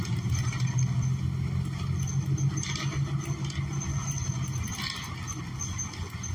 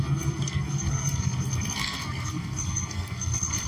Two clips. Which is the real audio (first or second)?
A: first